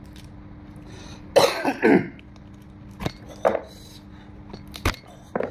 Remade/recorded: recorded